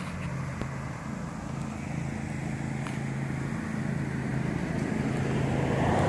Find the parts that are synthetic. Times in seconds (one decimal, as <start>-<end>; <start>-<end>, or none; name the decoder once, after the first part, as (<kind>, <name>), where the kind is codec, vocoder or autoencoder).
none